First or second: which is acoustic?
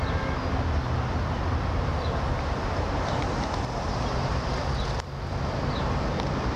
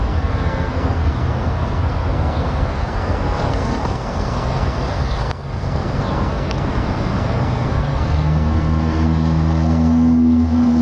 first